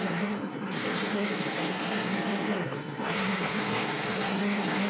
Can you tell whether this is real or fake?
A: fake